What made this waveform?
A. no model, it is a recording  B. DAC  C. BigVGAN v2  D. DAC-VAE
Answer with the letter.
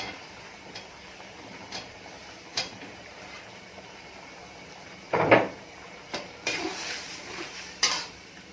C